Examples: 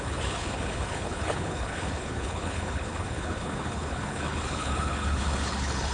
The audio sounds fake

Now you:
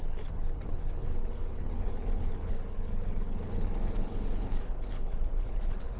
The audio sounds fake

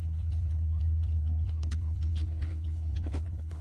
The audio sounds fake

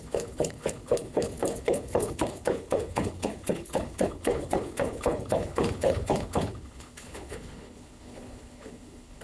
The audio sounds fake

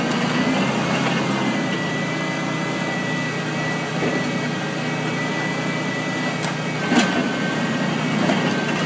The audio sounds real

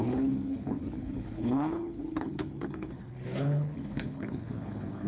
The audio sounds fake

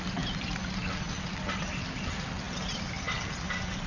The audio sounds real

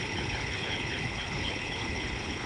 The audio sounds fake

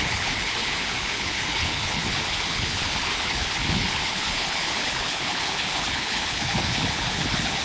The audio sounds fake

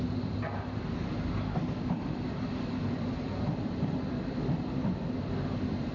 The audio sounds real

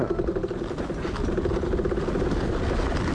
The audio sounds real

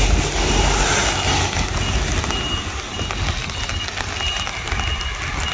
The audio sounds real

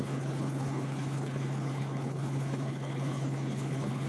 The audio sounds fake